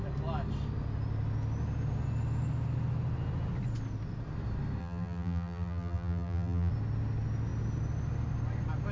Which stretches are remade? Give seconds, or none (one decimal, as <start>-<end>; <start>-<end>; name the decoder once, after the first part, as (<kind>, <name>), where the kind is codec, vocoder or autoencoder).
4.8-6.7 (vocoder, BigVGAN v2)